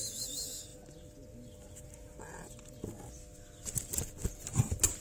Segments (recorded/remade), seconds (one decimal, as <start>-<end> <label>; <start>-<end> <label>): 0.0-5.0 recorded